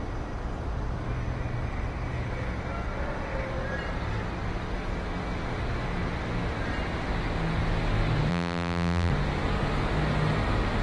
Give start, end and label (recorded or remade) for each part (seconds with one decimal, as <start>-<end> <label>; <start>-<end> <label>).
0.0-8.3 recorded; 8.3-9.1 remade; 9.1-10.8 recorded